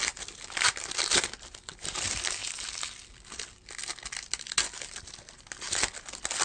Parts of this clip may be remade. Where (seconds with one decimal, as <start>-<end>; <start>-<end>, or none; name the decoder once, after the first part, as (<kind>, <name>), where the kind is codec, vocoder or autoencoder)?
1.0-2.4 (vocoder, BigVGAN v2)